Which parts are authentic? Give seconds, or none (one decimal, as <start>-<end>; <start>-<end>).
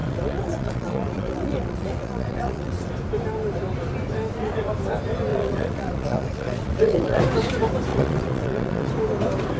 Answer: 2.9-5.3; 7.2-7.9; 8.9-9.6